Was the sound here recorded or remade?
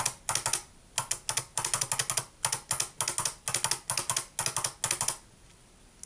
recorded